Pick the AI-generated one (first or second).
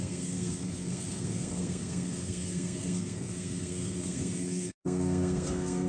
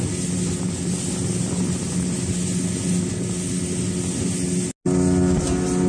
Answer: first